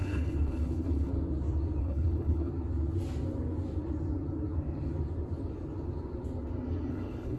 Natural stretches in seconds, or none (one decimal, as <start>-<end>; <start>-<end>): 1.1-1.8; 2.5-6.9